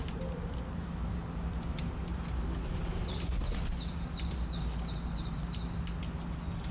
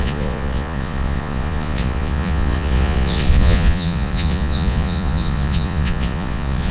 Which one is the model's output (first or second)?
second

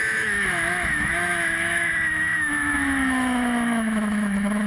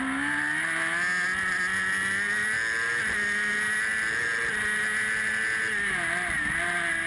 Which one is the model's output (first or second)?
first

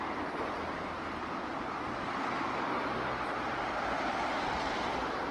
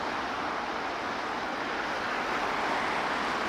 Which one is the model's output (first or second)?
first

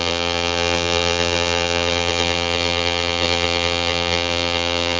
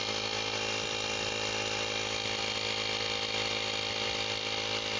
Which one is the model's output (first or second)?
first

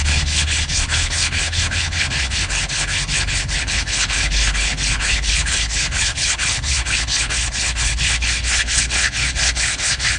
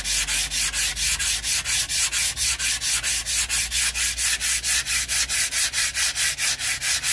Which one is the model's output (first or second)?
first